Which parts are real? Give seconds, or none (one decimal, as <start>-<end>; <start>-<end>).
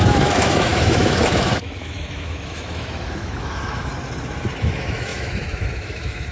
3.9-4.6